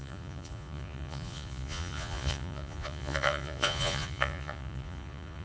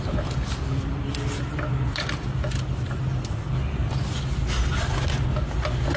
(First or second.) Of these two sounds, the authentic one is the second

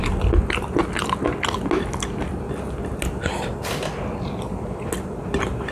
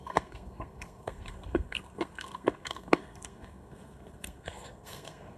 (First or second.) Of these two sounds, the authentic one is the first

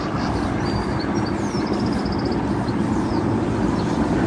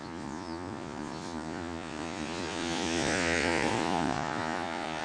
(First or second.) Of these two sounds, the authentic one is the first